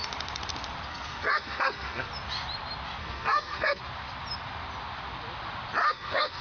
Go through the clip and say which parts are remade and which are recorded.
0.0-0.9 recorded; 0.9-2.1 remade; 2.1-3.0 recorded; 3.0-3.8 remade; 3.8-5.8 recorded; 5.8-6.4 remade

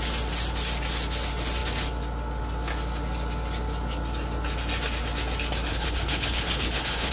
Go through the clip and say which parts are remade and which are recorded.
0.0-5.7 recorded; 5.7-7.1 remade

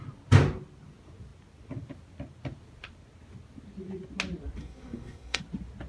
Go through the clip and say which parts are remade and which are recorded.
0.0-4.6 recorded; 4.6-5.4 remade; 5.4-5.9 recorded

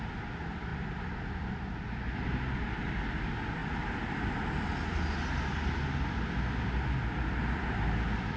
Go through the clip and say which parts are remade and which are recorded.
0.0-8.4 recorded

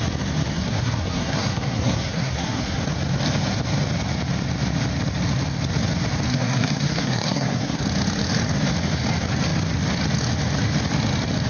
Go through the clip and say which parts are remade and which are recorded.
0.0-0.5 recorded; 0.5-2.8 remade; 2.8-6.3 recorded; 6.3-7.8 remade; 7.8-11.5 recorded

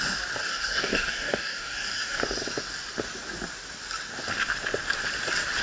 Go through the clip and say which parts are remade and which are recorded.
0.0-0.4 recorded; 0.4-2.2 remade; 2.2-5.6 recorded